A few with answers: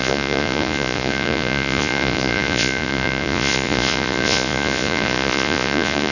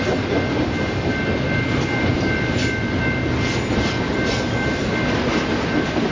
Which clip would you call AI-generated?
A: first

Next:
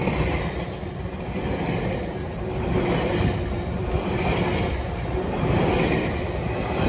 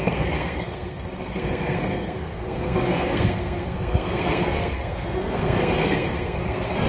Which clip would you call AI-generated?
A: second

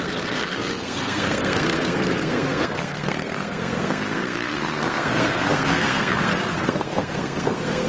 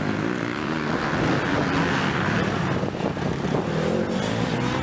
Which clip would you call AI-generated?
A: first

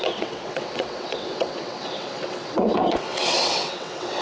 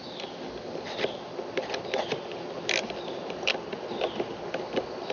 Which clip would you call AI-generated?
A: first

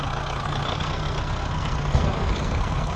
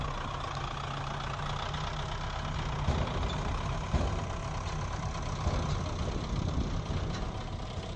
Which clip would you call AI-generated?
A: first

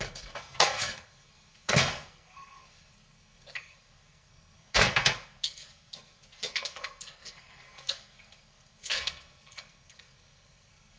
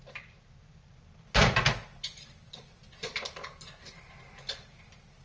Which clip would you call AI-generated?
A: first